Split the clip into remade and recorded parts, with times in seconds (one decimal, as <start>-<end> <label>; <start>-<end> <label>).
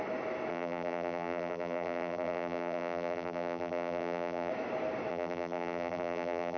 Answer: 0.0-0.5 recorded; 0.5-4.5 remade; 4.5-5.1 recorded; 5.1-6.6 remade